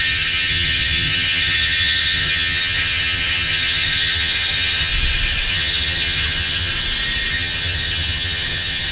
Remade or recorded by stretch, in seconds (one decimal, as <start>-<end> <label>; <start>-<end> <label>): 0.0-4.9 remade; 4.9-5.5 recorded; 5.5-6.7 remade; 6.7-7.3 recorded; 7.3-8.9 remade